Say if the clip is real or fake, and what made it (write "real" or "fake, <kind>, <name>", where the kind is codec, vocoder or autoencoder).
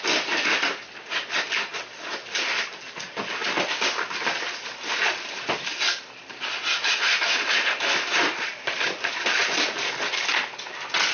real